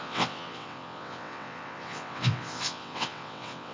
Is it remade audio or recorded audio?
remade